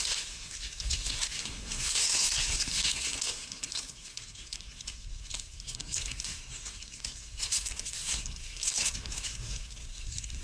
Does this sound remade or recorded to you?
remade